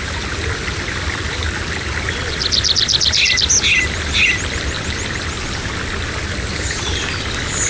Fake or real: real